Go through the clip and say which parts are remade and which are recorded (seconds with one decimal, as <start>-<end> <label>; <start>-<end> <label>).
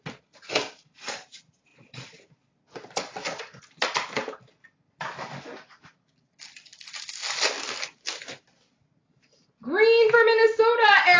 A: 0.0-11.2 recorded